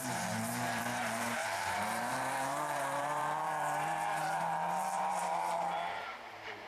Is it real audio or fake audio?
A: fake